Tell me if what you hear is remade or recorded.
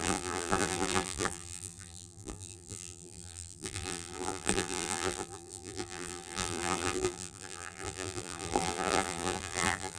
remade